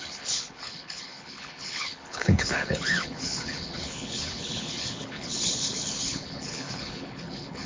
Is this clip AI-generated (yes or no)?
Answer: yes